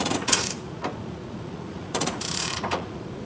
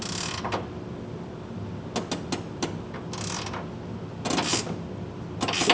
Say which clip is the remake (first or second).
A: first